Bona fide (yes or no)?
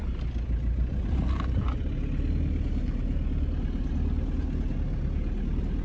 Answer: yes